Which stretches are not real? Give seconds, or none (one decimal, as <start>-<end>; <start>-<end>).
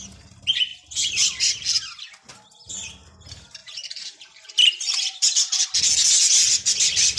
3.6-5.4